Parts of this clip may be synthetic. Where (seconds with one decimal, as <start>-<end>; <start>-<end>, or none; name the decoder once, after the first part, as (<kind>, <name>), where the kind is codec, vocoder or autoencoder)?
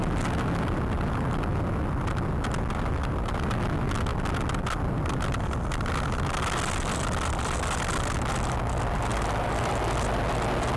none